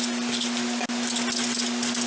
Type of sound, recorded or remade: recorded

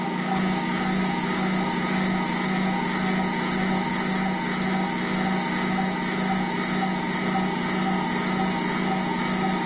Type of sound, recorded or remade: recorded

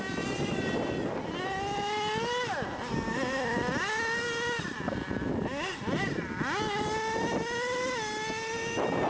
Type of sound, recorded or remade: recorded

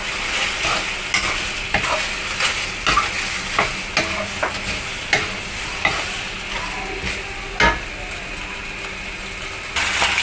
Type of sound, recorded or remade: recorded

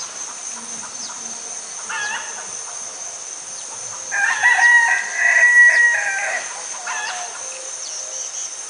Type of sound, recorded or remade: recorded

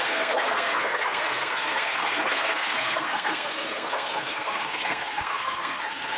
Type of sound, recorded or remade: remade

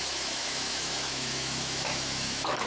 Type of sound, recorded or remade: remade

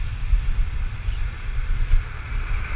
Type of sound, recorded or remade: recorded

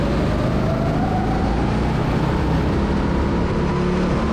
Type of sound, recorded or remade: recorded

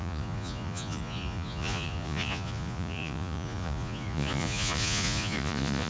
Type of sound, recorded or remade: remade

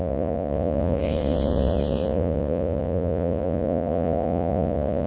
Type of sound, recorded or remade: remade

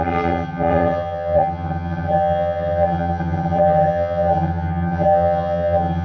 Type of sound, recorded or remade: remade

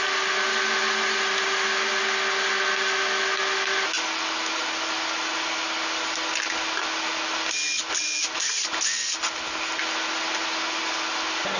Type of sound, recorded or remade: recorded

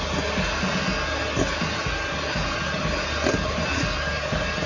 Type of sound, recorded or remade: recorded